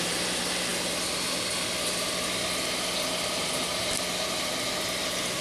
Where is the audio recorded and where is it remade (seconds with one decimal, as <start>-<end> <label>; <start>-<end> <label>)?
0.0-5.4 recorded